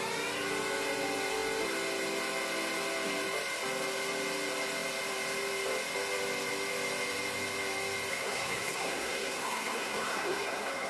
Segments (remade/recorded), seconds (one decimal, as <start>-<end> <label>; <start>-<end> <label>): 0.0-8.1 recorded; 8.1-10.9 remade